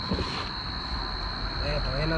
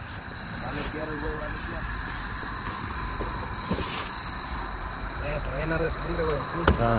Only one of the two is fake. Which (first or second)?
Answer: second